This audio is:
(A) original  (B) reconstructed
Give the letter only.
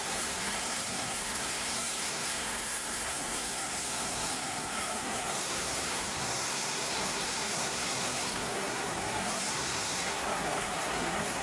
B